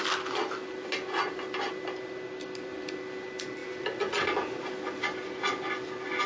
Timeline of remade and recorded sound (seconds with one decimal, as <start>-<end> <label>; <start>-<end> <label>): 0.0-6.3 recorded